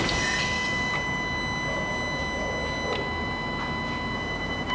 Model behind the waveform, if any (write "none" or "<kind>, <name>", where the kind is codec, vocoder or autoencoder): none